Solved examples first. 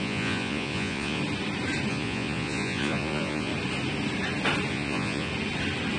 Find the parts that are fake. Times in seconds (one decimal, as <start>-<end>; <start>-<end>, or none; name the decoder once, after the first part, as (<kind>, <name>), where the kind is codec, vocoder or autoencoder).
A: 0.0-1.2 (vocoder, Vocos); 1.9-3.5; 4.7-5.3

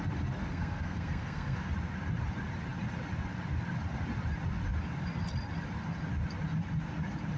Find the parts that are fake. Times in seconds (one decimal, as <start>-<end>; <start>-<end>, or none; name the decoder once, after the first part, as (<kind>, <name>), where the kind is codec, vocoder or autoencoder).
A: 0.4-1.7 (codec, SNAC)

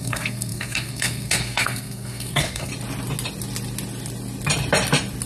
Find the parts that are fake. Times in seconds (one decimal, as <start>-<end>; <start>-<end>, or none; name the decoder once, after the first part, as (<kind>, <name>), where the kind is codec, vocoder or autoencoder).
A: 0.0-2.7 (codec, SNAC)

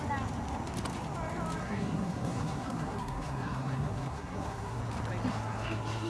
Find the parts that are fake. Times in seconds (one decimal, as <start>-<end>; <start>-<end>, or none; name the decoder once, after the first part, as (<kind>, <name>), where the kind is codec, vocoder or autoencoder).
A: 1.6-4.8 (codec, SNAC); 5.3-6.1

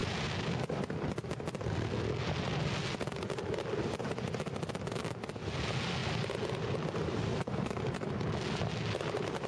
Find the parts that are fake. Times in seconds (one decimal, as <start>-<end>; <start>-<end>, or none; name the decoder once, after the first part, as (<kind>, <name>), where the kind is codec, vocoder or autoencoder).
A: none